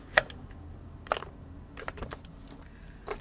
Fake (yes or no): no